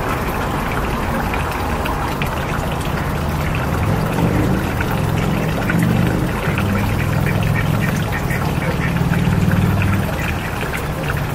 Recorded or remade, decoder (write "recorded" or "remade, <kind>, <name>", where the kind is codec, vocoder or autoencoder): recorded